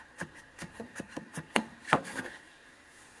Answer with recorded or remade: remade